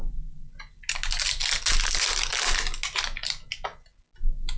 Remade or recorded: recorded